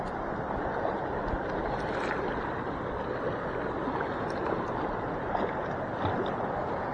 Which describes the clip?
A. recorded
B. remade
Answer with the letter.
A